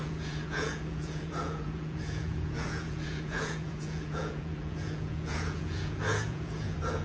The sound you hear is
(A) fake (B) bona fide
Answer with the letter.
A